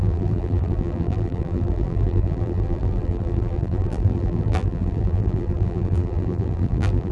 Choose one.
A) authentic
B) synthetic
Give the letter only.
B